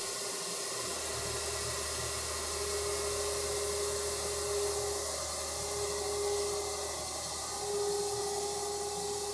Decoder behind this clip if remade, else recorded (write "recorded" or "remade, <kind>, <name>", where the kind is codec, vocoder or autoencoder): recorded